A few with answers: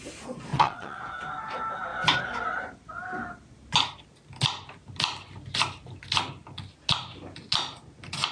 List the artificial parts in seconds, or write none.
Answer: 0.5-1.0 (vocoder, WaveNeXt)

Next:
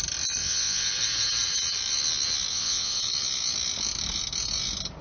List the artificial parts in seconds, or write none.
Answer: 0.4-0.9 (vocoder, WaveNeXt); 2.5-3.0

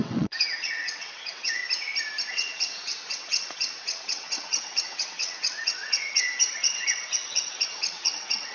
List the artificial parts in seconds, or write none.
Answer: 0.0-1.6 (vocoder, WaveNeXt); 2.3-8.5

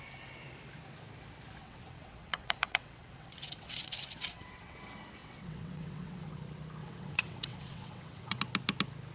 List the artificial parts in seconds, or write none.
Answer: 1.6-4.8 (vocoder, WaveNeXt); 5.2-6.3; 6.8-8.4